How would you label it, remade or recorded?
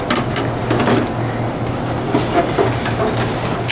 recorded